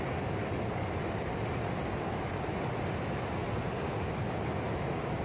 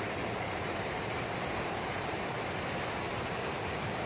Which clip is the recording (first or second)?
first